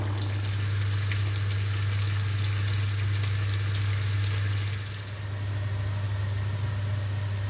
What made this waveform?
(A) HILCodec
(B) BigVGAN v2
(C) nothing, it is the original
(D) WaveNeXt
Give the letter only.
C